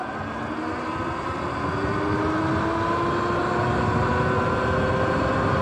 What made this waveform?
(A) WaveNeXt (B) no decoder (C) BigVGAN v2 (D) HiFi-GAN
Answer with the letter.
B